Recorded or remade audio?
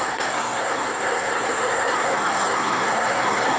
remade